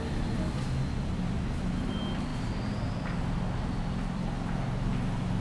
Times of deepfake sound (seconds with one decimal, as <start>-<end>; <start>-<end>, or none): none